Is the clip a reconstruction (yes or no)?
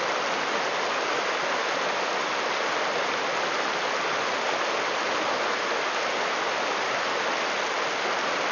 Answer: no